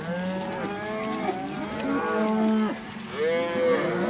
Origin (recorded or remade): recorded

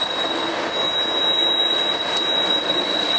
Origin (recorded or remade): recorded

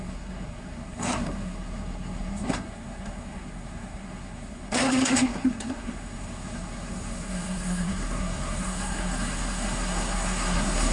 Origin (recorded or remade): remade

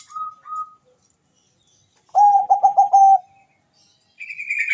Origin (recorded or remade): recorded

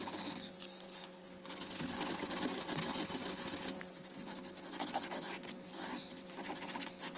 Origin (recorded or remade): remade